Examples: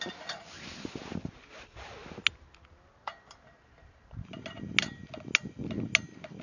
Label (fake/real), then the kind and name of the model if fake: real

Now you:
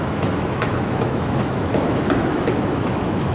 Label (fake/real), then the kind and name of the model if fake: fake, autoencoder, DAC-VAE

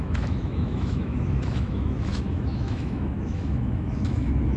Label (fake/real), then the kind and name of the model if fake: fake, autoencoder, DAC-VAE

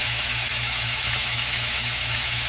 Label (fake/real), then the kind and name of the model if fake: fake, autoencoder, DAC-VAE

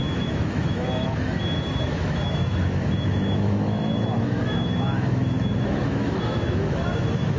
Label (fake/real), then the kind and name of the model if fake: fake, autoencoder, DAC-VAE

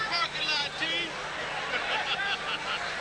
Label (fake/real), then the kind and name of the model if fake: real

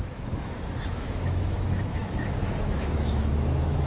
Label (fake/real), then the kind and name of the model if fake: fake, autoencoder, DAC-VAE